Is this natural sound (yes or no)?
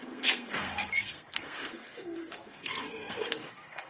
no